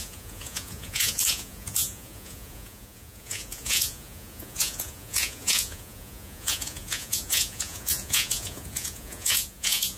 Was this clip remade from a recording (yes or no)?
yes